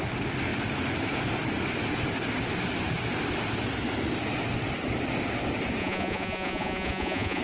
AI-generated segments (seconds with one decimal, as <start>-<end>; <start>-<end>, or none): 5.8-7.4